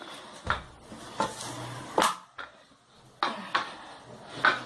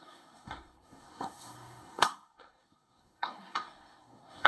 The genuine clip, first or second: first